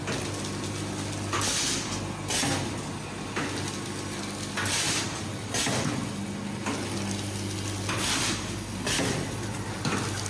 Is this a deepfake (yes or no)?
no